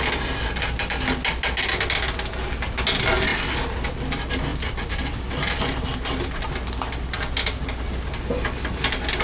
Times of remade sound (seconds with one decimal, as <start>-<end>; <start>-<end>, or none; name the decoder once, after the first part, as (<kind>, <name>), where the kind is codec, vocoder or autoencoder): 4.5-5.3 (vocoder, BigVGAN v2)